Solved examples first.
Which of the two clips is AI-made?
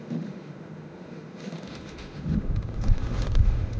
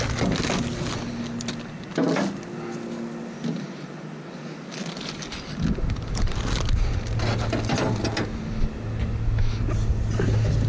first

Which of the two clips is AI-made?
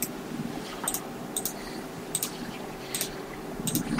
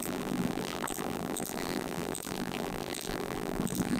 second